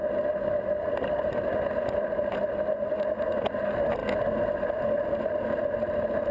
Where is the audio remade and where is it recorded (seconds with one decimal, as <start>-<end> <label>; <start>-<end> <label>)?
0.0-6.3 recorded